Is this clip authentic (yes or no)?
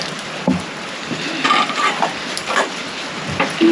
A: yes